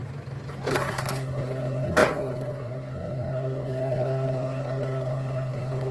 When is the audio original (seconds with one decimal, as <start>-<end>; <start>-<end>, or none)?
0.0-0.7